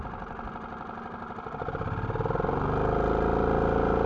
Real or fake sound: real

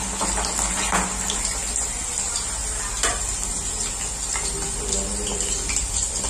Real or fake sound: real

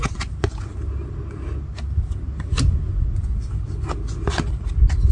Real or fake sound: real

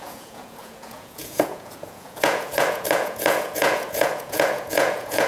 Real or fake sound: fake